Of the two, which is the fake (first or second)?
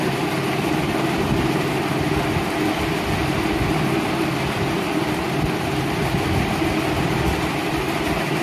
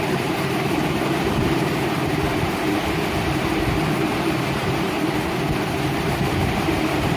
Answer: second